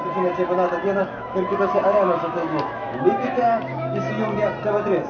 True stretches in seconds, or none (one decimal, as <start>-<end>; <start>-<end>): 0.0-1.0; 4.1-5.1